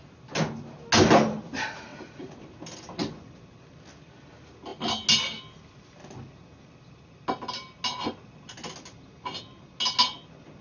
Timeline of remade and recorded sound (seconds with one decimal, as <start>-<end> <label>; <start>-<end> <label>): 0.0-1.9 recorded; 1.9-2.4 remade; 2.4-10.6 recorded

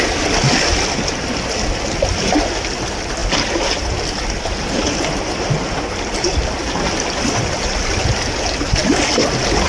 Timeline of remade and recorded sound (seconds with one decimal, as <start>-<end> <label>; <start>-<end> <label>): 0.0-9.7 recorded